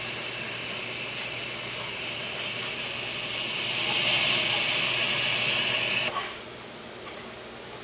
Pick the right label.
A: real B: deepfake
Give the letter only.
A